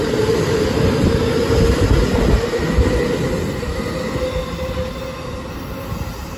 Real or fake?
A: real